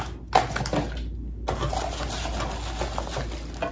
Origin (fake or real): real